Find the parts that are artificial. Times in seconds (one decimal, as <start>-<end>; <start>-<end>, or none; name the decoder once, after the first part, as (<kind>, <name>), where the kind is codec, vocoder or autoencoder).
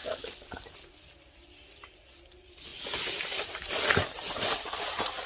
none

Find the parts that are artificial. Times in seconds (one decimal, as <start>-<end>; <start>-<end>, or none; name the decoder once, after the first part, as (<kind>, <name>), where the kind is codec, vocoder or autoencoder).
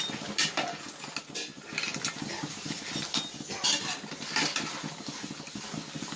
none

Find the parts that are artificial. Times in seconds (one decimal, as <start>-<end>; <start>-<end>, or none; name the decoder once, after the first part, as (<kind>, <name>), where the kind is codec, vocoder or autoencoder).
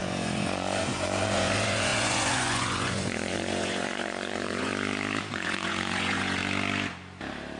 0.0-4.7 (vocoder, Vocos); 5.3-6.4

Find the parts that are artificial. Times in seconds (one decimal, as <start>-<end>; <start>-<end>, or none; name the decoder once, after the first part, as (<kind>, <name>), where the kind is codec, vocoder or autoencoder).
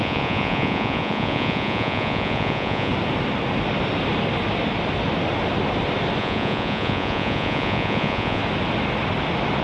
0.0-2.9 (vocoder, Vocos); 6.2-8.4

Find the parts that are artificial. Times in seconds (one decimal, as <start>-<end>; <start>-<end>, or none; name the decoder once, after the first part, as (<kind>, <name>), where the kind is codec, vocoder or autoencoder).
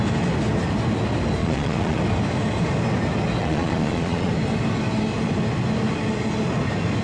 1.4-2.0 (vocoder, Vocos); 3.4-4.3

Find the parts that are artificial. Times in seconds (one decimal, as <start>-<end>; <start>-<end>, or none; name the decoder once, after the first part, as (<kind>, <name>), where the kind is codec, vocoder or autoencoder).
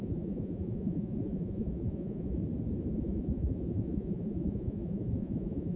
0.0-2.4 (vocoder, Vocos); 2.9-5.8